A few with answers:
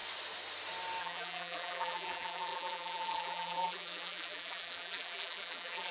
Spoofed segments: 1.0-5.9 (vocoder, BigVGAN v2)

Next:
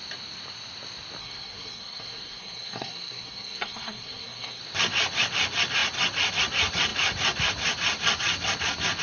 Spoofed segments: 1.2-4.6 (codec, SNAC)